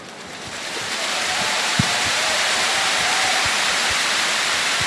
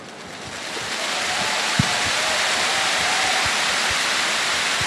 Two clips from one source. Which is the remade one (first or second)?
first